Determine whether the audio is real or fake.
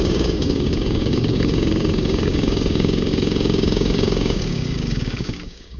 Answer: fake